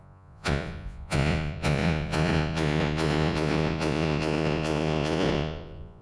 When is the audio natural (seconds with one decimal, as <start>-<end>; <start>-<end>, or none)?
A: none